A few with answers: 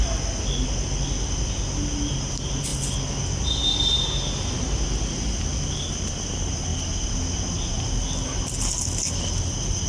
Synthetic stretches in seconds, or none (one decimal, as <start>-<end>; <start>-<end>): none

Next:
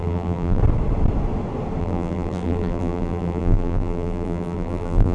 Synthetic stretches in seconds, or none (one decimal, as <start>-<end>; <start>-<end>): 0.0-0.6; 1.8-5.1

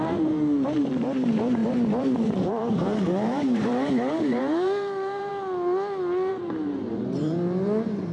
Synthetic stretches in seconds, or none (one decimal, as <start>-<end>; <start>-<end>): 0.0-5.3; 6.3-8.1

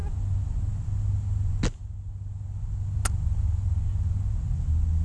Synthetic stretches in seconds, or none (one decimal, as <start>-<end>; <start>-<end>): none